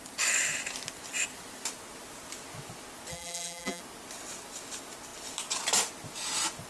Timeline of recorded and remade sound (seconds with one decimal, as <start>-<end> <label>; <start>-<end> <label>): 0.0-3.1 recorded; 3.1-3.8 remade; 3.8-6.7 recorded